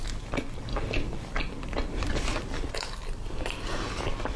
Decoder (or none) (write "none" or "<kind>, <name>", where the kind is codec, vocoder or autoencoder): none